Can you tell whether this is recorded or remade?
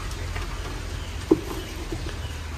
recorded